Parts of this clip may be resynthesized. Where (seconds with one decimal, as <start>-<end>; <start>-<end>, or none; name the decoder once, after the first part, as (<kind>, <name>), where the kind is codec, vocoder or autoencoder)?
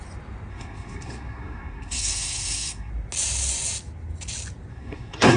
0.5-2.9 (codec, SNAC); 4.7-5.4